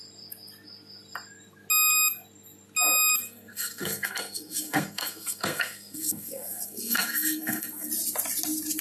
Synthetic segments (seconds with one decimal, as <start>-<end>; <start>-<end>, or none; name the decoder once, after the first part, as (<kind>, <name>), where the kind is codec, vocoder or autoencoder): 3.2-7.9 (codec, SNAC)